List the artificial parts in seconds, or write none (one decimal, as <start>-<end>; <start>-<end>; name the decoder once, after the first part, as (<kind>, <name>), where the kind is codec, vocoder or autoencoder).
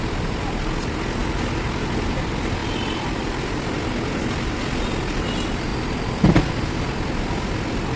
2.6-3.8 (vocoder, BigVGAN v2); 5.7-6.5